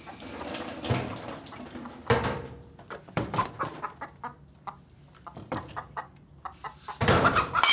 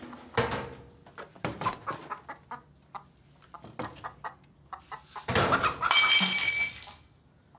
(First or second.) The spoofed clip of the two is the first